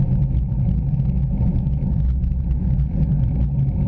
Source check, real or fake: real